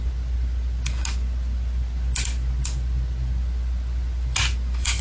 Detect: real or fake real